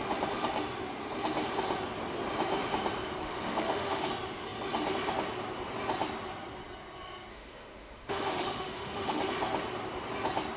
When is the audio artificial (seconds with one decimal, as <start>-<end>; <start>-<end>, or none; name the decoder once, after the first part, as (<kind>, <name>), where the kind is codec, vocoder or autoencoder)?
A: 3.2-4.1 (autoencoder, DAC-VAE); 7.3-9.2